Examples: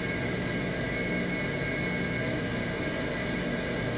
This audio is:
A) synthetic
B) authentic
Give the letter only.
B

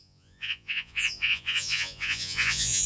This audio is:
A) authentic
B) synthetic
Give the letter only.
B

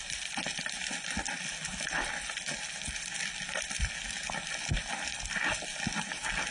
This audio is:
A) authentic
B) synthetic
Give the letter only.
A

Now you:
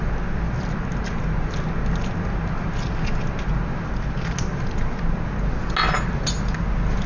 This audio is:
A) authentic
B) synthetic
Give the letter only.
A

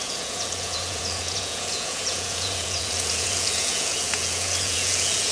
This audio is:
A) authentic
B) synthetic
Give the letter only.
B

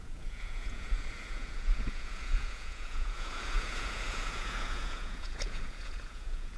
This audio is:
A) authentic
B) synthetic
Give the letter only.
B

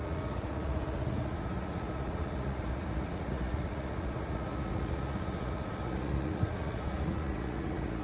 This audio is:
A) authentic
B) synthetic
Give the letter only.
B